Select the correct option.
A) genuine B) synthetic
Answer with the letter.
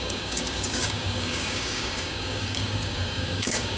B